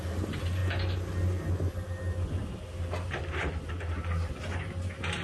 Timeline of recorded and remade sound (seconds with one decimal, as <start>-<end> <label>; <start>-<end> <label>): 0.0-5.2 recorded

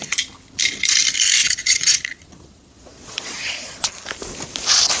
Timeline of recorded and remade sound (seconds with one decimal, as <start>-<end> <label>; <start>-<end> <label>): 0.0-1.4 recorded; 1.4-3.9 remade; 3.9-5.0 recorded